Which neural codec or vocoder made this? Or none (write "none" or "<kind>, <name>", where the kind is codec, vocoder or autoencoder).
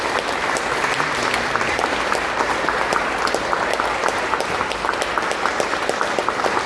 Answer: none